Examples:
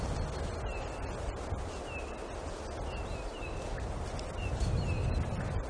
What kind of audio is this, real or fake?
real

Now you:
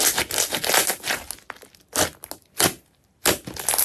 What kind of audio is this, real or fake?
real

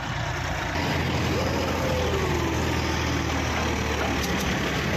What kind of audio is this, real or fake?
real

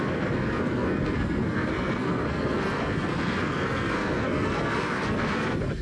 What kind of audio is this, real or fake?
fake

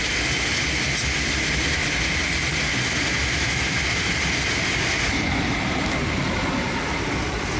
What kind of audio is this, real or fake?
real